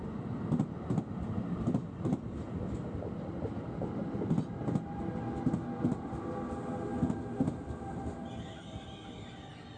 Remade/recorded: recorded